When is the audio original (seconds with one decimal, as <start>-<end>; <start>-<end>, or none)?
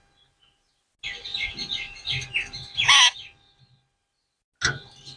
0.0-5.2